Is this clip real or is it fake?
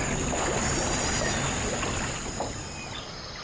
real